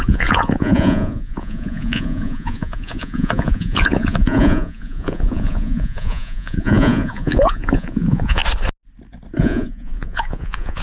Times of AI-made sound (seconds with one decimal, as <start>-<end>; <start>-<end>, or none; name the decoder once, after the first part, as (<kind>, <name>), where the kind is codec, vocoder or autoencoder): 0.0-8.4 (vocoder, Vocos); 9.4-10.8